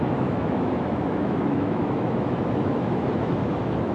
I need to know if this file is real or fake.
fake